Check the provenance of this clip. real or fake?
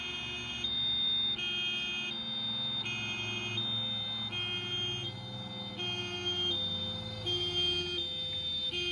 real